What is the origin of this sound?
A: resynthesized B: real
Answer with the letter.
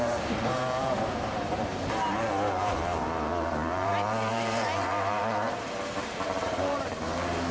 A